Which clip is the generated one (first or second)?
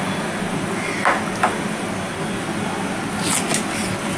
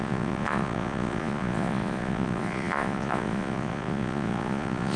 second